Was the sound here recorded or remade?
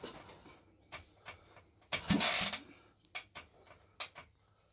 recorded